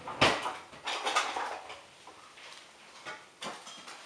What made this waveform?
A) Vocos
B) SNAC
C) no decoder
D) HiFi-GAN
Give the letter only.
C